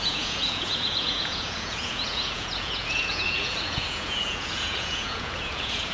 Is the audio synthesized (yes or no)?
yes